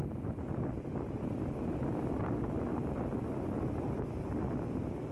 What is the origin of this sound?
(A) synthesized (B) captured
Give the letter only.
B